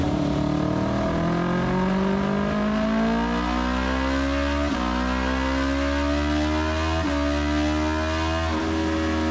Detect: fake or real real